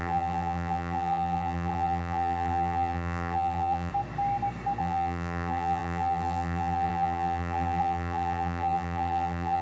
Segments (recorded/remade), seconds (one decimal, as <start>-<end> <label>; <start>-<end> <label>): 0.0-3.9 remade; 3.9-4.8 recorded; 4.8-9.6 remade